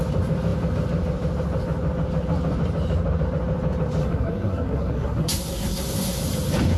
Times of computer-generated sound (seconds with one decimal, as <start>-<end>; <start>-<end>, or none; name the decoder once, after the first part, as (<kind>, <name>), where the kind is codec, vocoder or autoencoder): 4.0-6.2 (codec, SNAC)